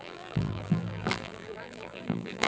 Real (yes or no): no